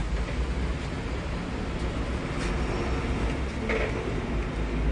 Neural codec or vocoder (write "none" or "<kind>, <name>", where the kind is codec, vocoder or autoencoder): none